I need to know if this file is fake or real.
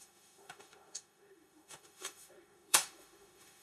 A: fake